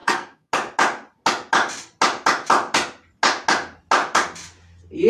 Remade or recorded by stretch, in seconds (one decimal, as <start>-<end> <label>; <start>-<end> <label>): 0.0-0.5 remade; 0.5-5.1 recorded